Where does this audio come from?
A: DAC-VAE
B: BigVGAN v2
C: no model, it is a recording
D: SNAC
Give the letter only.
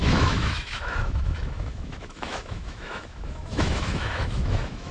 A